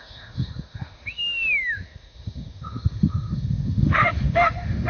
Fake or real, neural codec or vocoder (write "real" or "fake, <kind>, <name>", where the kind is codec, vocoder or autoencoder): fake, autoencoder, DAC-VAE